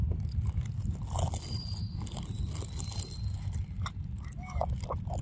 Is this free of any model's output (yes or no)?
yes